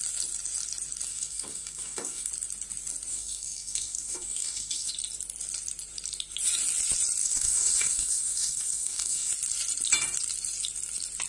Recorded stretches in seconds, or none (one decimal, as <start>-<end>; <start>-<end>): 0.0-1.1; 2.3-3.1; 4.9-7.2; 9.3-11.3